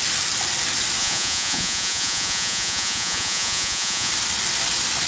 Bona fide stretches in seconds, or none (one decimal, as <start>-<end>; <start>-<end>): 0.0-1.0; 4.1-5.1